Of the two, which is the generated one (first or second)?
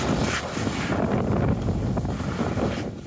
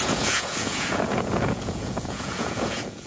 second